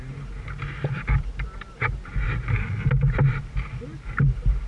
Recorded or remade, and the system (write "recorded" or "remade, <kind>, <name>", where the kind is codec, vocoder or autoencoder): recorded